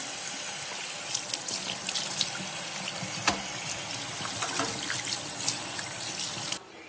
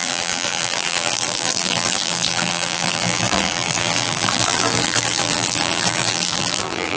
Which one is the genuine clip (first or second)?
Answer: first